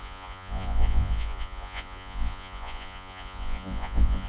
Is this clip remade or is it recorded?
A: remade